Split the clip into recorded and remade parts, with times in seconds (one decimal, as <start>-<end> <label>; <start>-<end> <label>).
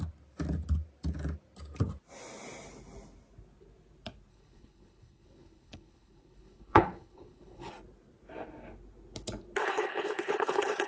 0.0-4.3 recorded; 4.3-7.7 remade; 7.7-9.6 recorded; 9.6-10.9 remade